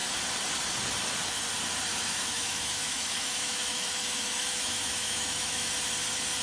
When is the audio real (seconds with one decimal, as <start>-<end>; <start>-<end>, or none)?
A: 0.0-1.9; 5.7-6.4